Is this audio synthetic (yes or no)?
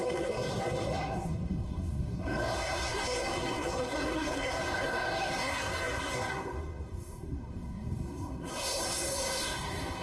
yes